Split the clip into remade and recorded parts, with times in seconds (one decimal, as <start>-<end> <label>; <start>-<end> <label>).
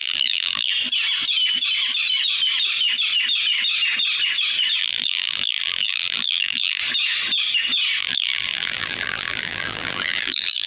0.0-0.7 remade; 0.7-4.8 recorded; 4.8-6.8 remade; 6.8-8.0 recorded; 8.0-10.7 remade